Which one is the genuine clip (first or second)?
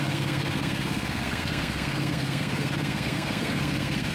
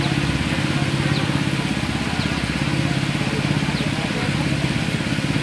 second